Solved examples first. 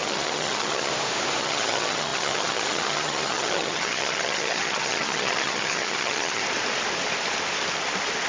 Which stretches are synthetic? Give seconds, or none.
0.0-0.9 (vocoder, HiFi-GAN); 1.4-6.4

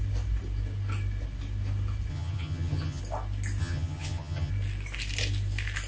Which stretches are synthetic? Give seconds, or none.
2.1-3.0 (vocoder, HiFi-GAN); 3.6-4.5

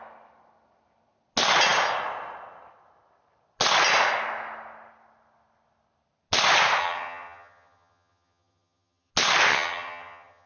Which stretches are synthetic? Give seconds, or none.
6.8-9.1 (vocoder, HiFi-GAN); 9.5-10.5

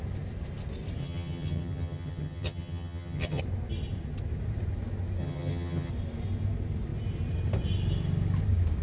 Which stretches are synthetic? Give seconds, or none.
1.0-3.4 (vocoder, HiFi-GAN); 5.2-5.9